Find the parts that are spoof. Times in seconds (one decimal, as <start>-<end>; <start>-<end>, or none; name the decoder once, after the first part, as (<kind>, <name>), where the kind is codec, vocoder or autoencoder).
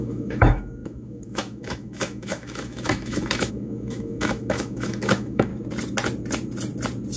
0.0-5.5 (autoencoder, DAC-VAE)